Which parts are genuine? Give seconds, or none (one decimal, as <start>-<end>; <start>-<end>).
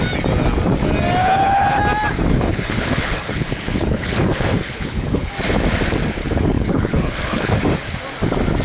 0.0-1.2; 1.8-2.3; 5.3-6.2; 7.6-8.6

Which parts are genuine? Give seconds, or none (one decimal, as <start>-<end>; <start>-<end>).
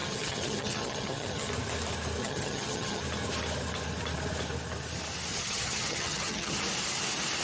1.5-2.2; 3.0-5.3; 6.5-7.4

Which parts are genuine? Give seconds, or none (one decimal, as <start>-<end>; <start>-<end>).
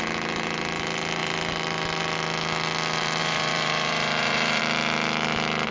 0.0-3.2; 4.6-5.7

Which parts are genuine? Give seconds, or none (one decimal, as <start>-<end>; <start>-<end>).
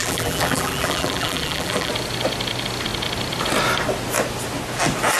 1.9-5.2